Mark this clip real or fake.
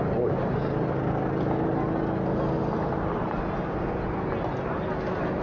real